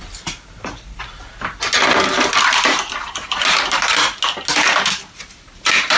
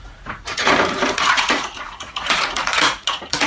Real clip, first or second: first